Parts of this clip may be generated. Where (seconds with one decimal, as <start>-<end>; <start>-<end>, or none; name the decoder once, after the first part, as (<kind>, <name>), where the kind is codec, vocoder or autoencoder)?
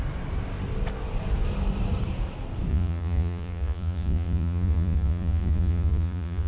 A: 2.7-6.5 (vocoder, Vocos)